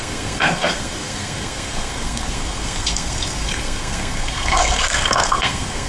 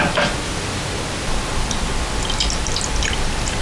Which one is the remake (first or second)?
first